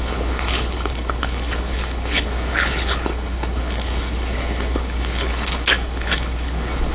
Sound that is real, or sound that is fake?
fake